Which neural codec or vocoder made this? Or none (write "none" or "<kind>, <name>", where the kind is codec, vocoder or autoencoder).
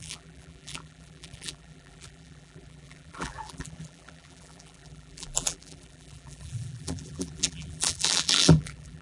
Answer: vocoder, BigVGAN v2